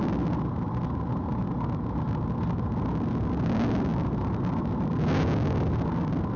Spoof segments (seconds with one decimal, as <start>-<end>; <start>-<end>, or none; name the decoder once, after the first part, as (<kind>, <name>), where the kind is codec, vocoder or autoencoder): none